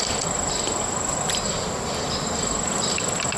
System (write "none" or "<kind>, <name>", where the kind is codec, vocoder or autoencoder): none